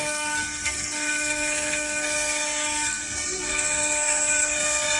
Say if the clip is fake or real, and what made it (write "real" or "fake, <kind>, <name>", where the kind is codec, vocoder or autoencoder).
fake, codec, SNAC